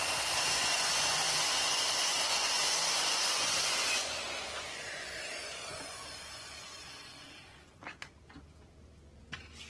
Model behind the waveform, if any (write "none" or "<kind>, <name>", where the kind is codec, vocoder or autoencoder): vocoder, Vocos